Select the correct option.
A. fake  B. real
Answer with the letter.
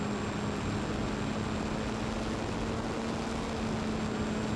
B